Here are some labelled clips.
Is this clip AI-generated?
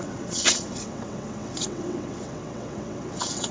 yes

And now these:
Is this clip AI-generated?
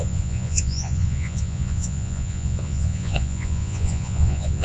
yes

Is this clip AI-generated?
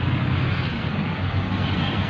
yes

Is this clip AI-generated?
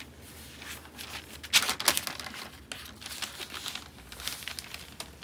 no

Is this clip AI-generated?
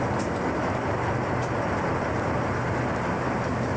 no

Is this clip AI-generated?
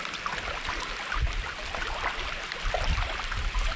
no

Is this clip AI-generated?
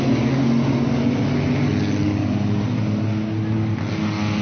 no